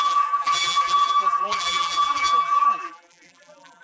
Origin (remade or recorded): remade